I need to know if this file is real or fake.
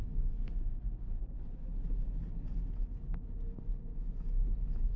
real